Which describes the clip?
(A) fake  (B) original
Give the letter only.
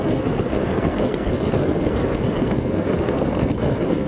A